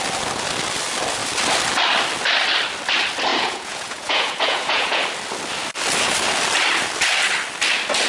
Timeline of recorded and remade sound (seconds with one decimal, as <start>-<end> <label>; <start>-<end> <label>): 0.0-3.3 recorded; 3.3-5.0 remade; 5.0-8.1 recorded